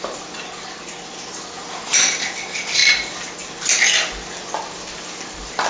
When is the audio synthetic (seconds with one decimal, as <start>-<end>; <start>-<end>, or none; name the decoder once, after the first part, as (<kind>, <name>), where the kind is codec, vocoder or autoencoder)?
none